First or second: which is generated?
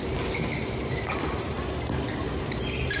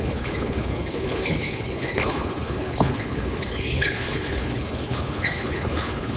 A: second